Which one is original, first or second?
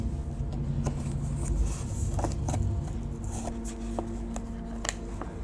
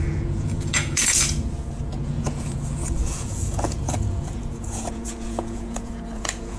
first